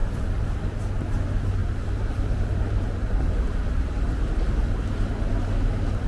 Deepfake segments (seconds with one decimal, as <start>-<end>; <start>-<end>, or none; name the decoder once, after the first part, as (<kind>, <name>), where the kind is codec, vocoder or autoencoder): 1.6-4.1 (vocoder, BigVGAN v2)